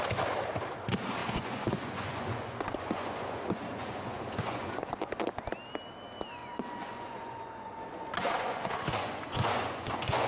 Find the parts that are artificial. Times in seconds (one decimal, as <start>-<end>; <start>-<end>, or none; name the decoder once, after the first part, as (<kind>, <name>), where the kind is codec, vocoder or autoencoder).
1.2-5.4 (vocoder, Vocos); 6.4-10.3